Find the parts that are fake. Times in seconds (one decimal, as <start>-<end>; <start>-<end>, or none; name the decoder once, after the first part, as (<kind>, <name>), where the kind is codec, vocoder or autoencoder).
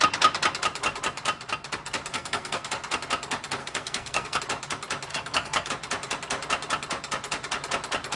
2.1-2.7 (codec, SNAC); 3.6-4.4; 5.1-5.7